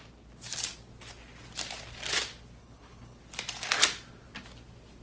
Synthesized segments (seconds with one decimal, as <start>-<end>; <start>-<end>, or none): 2.6-3.2

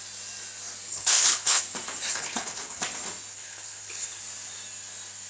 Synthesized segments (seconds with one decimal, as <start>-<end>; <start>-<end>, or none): 0.9-1.6; 2.1-2.8; 3.3-4.2

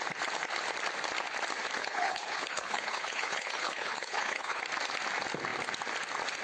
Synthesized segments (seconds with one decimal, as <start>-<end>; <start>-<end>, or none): 1.8-4.6

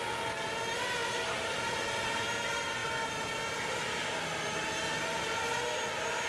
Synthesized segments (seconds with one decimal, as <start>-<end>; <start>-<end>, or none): none

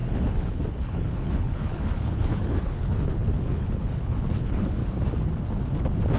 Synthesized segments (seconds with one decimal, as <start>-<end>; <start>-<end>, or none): 0.0-4.8